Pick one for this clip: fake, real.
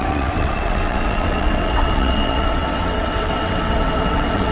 fake